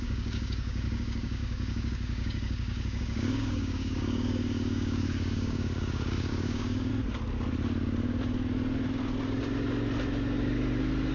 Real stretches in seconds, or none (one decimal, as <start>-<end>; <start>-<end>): 6.9-11.1